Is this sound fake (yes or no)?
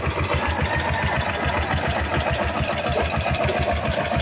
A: no